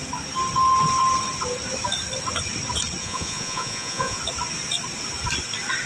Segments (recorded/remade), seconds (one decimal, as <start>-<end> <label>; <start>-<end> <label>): 0.0-3.0 recorded; 3.0-4.2 remade; 4.2-5.9 recorded

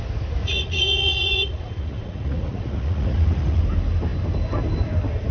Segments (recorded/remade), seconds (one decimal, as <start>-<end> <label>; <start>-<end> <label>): 0.0-0.4 recorded; 0.4-3.6 remade; 3.6-5.3 recorded

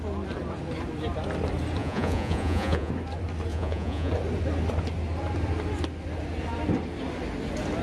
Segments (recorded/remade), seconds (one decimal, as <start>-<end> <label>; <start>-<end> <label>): 0.0-1.8 recorded; 1.8-2.9 remade; 2.9-3.5 recorded; 3.5-4.1 remade; 4.1-7.8 recorded

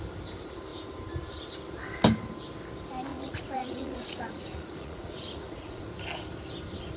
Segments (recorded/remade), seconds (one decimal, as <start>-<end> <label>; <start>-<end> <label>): 0.0-3.1 recorded; 3.1-5.8 remade; 5.8-7.0 recorded